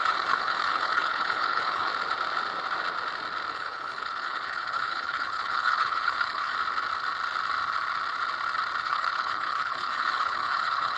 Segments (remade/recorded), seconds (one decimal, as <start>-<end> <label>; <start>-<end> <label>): 0.0-1.9 remade; 1.9-3.5 recorded; 3.5-6.5 remade; 6.5-8.8 recorded; 8.8-11.0 remade